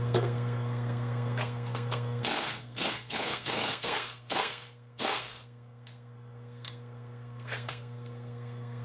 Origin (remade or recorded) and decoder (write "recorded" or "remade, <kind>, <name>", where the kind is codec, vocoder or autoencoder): remade, codec, SNAC